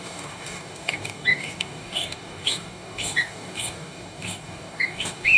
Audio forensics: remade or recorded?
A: remade